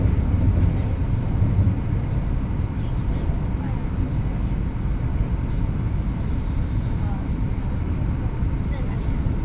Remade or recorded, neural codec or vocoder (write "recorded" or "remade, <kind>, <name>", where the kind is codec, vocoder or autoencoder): recorded